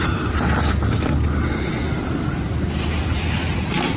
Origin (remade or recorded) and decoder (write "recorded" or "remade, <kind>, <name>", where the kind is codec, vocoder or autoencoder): recorded